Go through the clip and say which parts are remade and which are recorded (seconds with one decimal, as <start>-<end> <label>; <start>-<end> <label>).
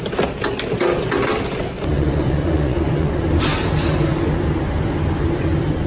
0.0-1.9 recorded; 1.9-3.2 remade; 3.2-5.9 recorded